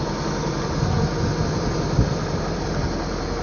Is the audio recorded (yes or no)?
yes